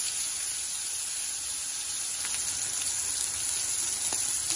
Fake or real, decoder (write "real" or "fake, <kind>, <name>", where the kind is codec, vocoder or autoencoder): real